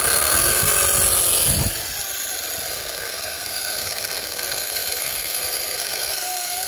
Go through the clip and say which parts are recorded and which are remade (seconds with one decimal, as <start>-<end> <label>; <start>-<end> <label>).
0.0-0.7 remade; 0.7-2.7 recorded; 2.7-6.7 remade